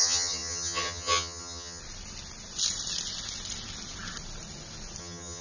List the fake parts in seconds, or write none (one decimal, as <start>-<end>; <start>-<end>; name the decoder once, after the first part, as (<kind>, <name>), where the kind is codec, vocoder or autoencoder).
0.0-1.8 (vocoder, HiFi-GAN); 5.0-5.4

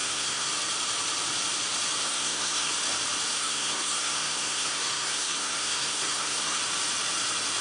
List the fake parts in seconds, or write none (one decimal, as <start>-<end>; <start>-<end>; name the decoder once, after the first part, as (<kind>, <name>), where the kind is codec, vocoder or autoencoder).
0.0-0.5 (codec, SNAC); 2.0-2.7; 3.3-6.6

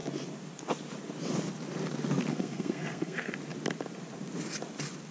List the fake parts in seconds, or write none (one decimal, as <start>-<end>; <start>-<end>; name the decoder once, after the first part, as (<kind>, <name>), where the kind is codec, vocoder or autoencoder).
2.3-3.3 (codec, SNAC)

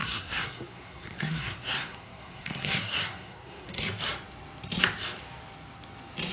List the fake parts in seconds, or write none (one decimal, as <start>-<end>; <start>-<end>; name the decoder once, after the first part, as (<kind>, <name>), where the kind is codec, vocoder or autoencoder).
0.0-3.8 (codec, SNAC)

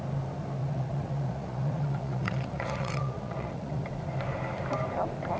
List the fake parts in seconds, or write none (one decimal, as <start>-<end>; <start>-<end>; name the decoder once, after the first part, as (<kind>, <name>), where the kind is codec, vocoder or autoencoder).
0.6-3.8 (vocoder, Vocos)

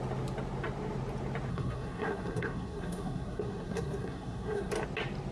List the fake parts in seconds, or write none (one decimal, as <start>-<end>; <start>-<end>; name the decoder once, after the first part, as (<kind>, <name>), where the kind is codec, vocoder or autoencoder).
1.5-4.7 (codec, SNAC)

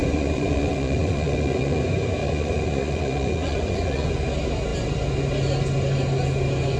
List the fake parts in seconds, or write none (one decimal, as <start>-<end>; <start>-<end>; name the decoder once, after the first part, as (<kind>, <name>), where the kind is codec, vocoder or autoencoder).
0.0-1.8 (vocoder, Vocos); 2.2-4.1